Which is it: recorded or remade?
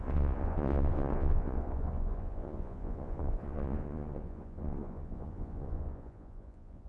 remade